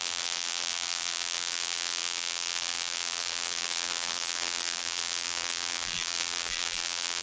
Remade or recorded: remade